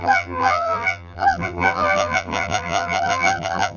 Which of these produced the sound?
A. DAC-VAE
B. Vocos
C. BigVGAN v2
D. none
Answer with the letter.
C